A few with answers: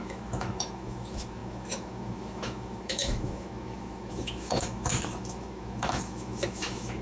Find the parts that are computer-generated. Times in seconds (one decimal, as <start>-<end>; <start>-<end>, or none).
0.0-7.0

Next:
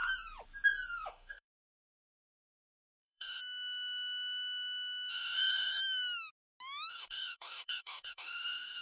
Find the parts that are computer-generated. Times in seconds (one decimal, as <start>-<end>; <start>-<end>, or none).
1.1-3.4; 5.1-5.8; 6.9-8.8

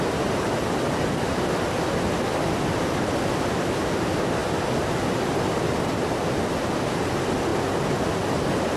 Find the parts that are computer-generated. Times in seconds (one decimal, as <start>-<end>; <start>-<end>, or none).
none

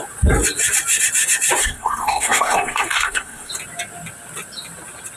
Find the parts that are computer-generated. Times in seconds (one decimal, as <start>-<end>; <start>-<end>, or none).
1.6-3.5

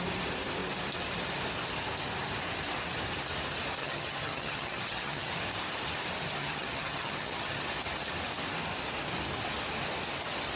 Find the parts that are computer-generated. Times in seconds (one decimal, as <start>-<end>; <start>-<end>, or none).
3.8-5.3; 6.4-7.6

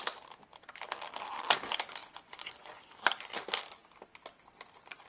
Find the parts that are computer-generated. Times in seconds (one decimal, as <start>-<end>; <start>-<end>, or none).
2.0-2.9